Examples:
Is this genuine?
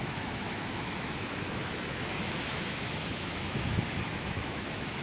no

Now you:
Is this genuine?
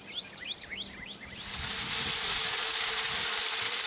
yes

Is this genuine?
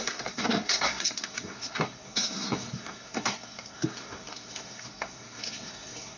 no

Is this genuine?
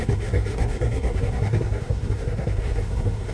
no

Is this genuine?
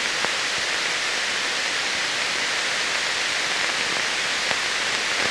yes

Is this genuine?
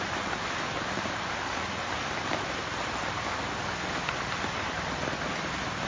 yes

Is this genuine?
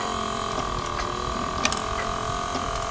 no